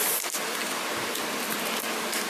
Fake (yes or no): no